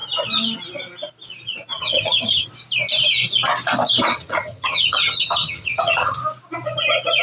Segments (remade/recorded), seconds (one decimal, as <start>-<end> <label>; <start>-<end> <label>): 0.0-1.8 recorded; 1.8-2.5 remade; 2.5-4.1 recorded; 4.1-6.2 remade; 6.2-7.2 recorded